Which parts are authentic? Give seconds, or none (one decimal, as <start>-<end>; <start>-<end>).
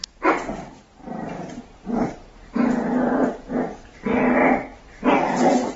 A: 3.5-5.8